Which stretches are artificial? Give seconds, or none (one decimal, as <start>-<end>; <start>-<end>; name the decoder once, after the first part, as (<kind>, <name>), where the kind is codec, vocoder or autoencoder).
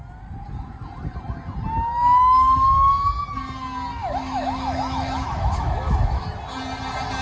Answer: 4.0-6.2 (autoencoder, DAC-VAE)